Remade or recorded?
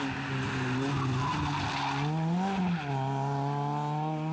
recorded